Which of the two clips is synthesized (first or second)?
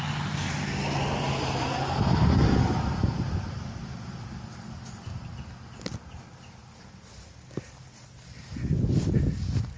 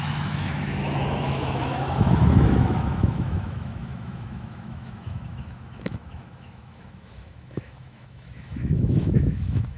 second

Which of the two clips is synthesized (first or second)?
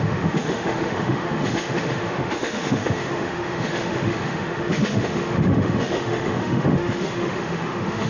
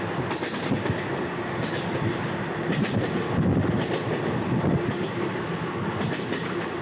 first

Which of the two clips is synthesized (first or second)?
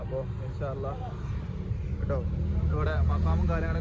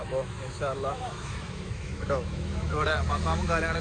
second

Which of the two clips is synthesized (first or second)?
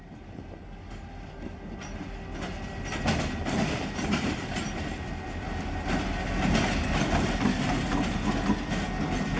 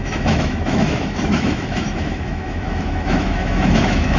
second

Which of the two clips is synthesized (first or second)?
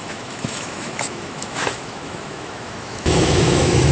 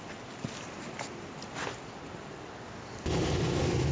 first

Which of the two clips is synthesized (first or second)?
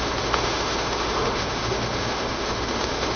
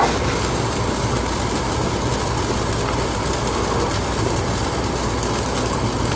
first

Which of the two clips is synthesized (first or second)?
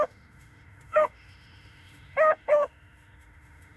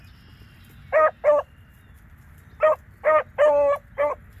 first